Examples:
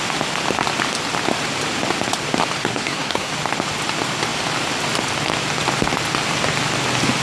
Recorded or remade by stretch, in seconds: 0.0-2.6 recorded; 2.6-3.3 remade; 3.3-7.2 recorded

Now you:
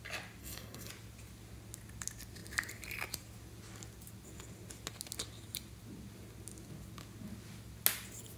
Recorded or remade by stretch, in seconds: 0.0-0.4 recorded; 0.4-0.9 remade; 0.9-8.4 recorded

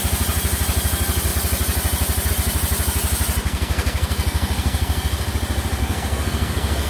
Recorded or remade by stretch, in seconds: 0.0-3.4 recorded; 3.4-5.3 remade; 5.3-5.8 recorded; 5.8-6.9 remade